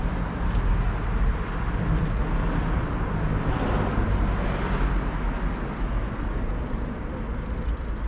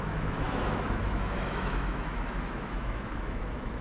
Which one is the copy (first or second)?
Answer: second